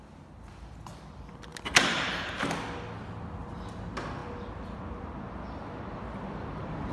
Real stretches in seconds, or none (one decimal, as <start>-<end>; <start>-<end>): 0.0-6.9